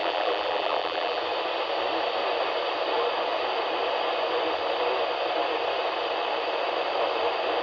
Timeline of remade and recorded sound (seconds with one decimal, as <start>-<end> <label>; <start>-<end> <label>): 0.0-1.2 remade; 1.2-7.6 recorded